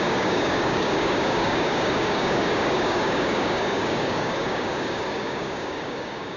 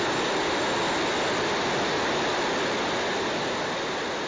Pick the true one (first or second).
second